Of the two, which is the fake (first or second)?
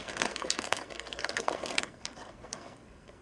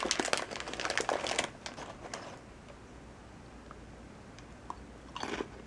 first